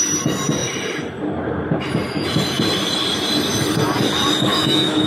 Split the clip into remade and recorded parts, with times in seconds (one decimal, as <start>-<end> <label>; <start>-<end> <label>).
0.0-4.5 recorded; 4.5-5.1 remade